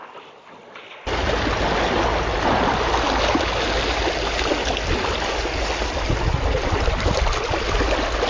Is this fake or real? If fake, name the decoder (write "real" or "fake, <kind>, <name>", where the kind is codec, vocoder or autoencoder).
real